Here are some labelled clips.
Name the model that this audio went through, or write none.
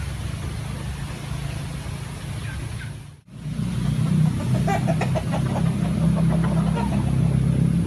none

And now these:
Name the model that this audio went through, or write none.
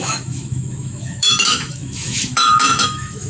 autoencoder, DAC-VAE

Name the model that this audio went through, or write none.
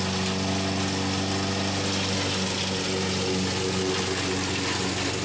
none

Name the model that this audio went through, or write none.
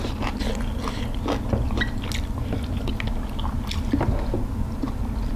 none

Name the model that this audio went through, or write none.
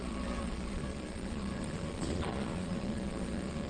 vocoder, Vocos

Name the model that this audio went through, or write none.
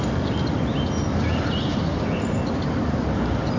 none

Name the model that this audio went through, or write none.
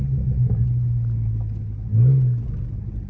none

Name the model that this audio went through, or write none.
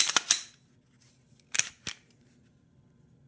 none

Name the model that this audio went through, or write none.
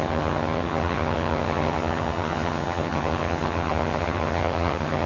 vocoder, HiFi-GAN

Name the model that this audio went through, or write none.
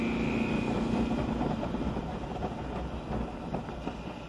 none